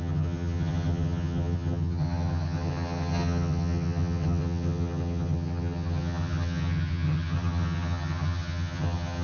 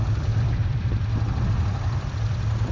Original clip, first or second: second